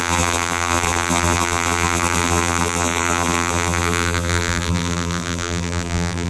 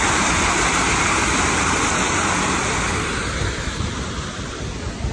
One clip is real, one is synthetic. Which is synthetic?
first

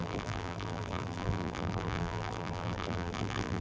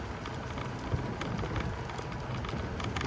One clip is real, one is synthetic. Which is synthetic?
first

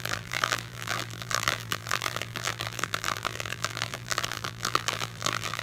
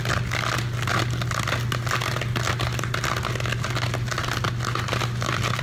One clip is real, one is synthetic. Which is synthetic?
first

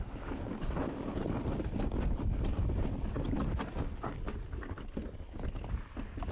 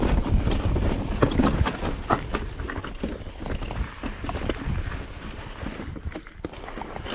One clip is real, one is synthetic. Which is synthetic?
second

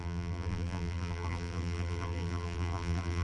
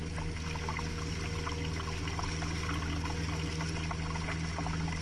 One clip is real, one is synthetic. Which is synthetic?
first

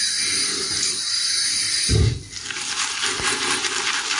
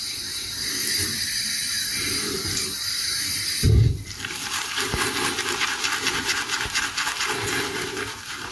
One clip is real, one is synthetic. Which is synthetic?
second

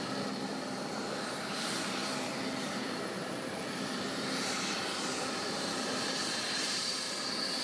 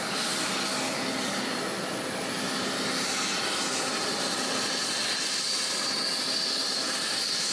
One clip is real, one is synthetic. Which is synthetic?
first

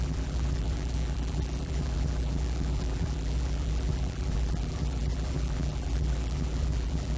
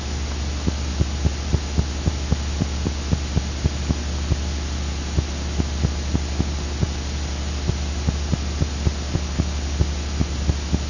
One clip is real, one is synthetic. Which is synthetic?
first